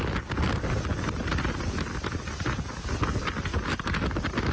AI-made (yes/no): no